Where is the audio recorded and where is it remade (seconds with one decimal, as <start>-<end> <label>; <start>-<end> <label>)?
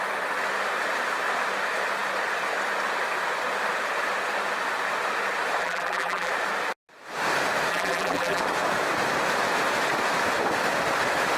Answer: 0.0-5.6 recorded; 5.6-6.3 remade; 6.3-7.7 recorded; 7.7-8.4 remade; 8.4-11.4 recorded